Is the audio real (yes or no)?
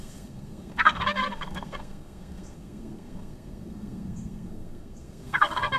no